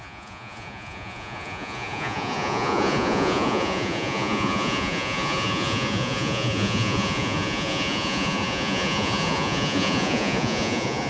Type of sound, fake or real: fake